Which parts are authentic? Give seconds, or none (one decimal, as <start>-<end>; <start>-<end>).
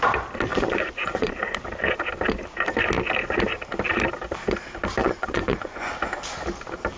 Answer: 0.0-0.5; 1.3-5.0; 5.9-7.0